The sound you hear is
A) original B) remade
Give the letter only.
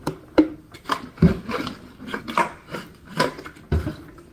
A